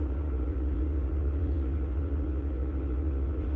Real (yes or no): no